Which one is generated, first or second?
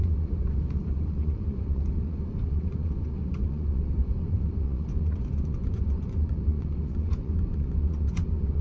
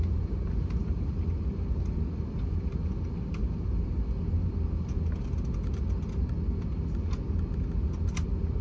first